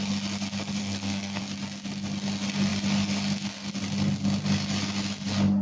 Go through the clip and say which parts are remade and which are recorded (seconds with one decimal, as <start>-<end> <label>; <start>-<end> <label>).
0.0-0.8 recorded; 0.8-1.4 remade; 1.4-5.6 recorded